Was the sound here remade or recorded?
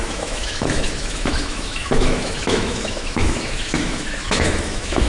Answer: remade